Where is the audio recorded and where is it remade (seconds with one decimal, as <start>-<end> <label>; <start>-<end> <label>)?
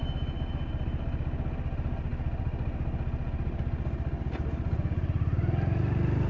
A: 0.0-6.3 recorded